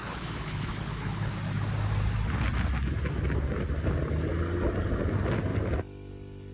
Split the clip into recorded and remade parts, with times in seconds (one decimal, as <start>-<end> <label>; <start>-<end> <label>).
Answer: 0.0-1.3 remade; 1.3-6.5 recorded